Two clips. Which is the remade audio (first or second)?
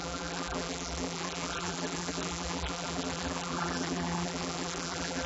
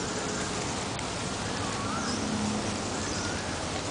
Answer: first